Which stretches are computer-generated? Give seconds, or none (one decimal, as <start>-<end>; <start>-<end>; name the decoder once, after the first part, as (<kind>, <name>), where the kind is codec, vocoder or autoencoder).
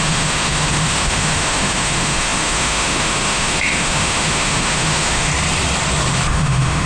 0.0-5.3 (autoencoder, DAC-VAE); 6.3-6.9